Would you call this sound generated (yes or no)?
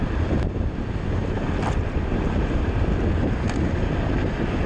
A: no